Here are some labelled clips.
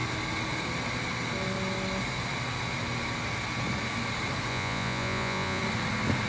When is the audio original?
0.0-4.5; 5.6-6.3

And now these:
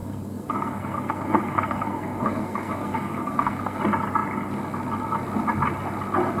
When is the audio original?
3.8-6.4

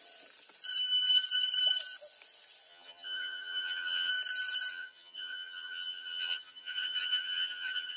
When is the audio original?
0.0-2.7; 4.1-4.7

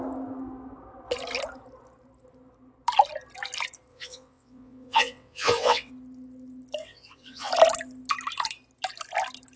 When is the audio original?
0.0-3.9; 5.9-6.8; 7.5-9.6

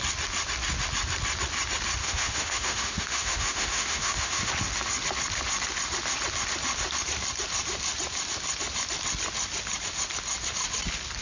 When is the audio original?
0.0-2.0; 4.5-11.2

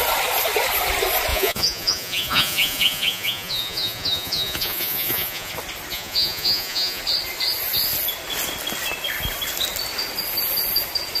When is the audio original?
0.0-1.3; 5.5-5.9; 7.0-11.2

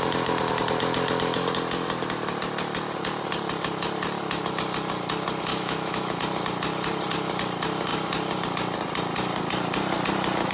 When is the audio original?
0.0-5.5; 6.2-10.5

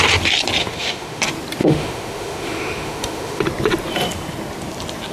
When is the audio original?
0.0-0.6; 1.2-1.6; 3.4-5.1